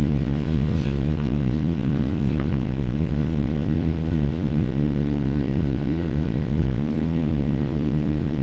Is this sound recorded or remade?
remade